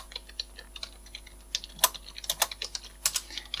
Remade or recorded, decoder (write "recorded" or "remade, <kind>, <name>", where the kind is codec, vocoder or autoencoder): recorded